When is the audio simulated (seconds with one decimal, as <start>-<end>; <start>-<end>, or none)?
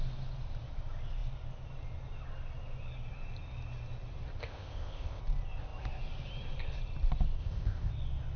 4.4-5.2; 7.4-7.9